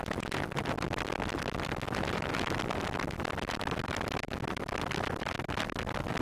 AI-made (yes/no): no